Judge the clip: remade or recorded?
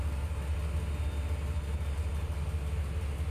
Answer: recorded